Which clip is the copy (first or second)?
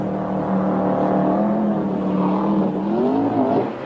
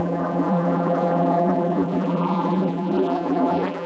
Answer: second